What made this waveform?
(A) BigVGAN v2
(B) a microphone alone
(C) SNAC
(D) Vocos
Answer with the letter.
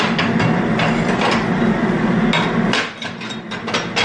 B